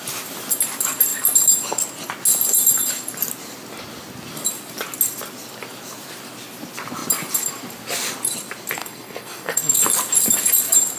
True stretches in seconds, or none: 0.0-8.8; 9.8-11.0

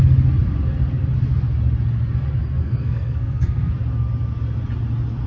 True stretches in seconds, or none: 0.0-2.6; 3.7-5.3

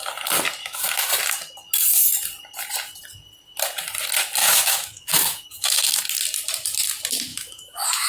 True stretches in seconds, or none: 0.0-0.6; 1.1-4.4; 6.0-7.3

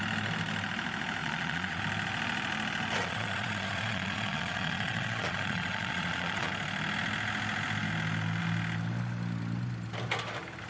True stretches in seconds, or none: 0.0-1.2; 1.8-3.0; 6.5-10.7

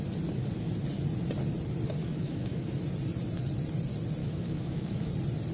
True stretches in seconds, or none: 0.0-2.0; 2.7-4.2; 5.1-5.5

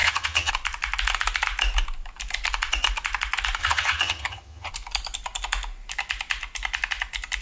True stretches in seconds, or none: 0.5-3.6; 4.7-7.4

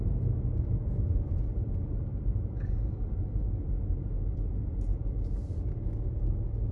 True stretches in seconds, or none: 0.0-6.7

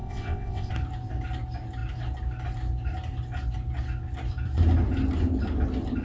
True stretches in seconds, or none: 0.7-6.0